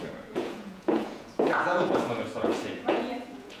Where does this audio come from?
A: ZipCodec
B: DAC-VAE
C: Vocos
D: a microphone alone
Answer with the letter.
C